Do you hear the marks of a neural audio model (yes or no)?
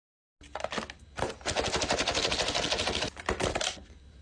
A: no